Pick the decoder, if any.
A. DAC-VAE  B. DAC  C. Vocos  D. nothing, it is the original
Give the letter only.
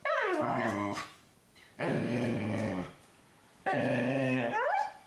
A